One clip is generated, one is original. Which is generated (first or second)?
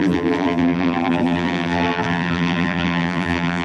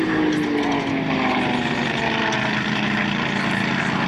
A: first